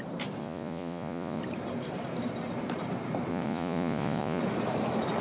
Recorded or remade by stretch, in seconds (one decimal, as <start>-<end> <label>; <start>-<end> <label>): 0.0-0.4 recorded; 0.4-1.4 remade; 1.4-3.3 recorded; 3.3-4.4 remade; 4.4-5.2 recorded